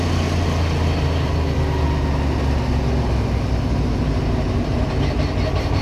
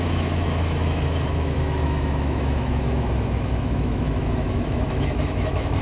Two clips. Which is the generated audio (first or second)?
second